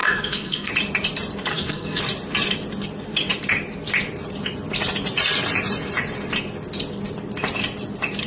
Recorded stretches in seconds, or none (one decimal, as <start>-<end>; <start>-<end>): 0.7-1.5; 2.0-8.3